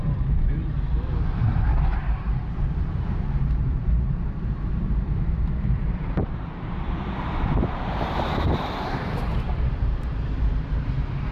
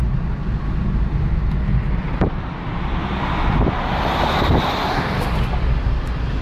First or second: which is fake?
first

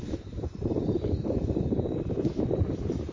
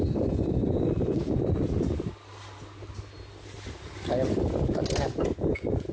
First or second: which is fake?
first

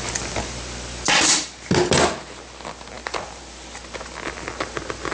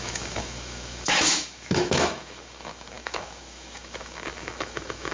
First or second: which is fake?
second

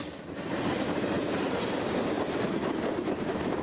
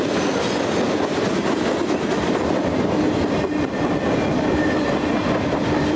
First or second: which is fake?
first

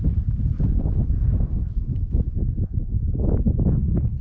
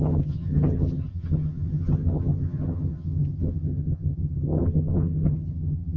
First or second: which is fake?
second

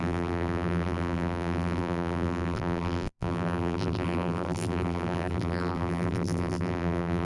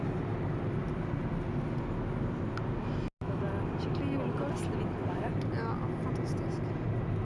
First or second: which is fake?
first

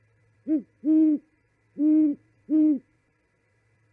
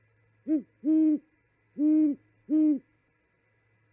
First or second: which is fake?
first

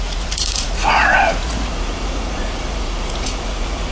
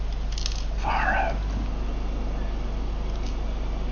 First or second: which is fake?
first